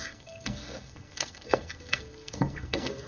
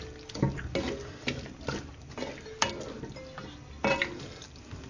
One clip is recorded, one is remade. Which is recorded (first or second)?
second